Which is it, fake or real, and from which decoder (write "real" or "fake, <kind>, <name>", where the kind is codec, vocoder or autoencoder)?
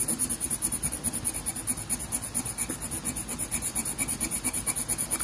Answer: real